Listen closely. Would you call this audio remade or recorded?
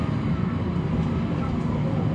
recorded